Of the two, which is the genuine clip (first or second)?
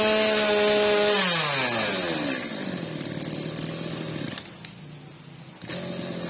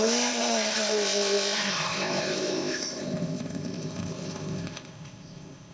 first